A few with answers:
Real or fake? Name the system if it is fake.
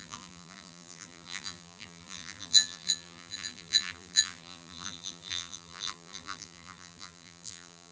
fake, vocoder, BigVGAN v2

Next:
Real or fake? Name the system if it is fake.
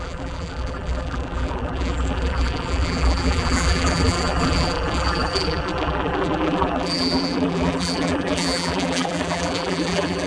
fake, vocoder, BigVGAN v2